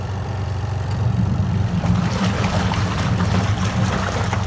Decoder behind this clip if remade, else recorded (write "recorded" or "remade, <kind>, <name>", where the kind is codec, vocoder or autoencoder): remade, vocoder, BigVGAN v2